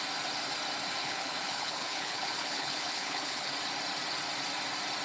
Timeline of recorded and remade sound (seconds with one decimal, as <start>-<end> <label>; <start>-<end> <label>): 0.0-1.0 recorded; 1.0-3.5 remade; 3.5-5.0 recorded